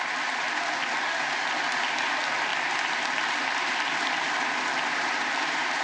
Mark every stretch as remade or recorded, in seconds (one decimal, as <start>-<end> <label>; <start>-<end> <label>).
0.0-4.7 recorded; 4.7-5.8 remade

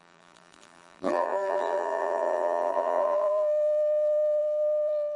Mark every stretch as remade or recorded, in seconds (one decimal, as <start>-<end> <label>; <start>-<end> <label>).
0.0-5.2 remade